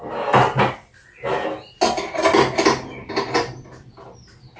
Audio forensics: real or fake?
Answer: real